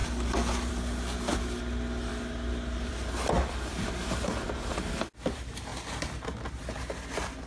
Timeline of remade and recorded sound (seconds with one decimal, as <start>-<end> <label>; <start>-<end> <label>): 0.0-7.5 recorded